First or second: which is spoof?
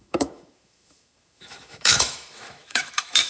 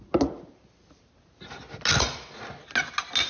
first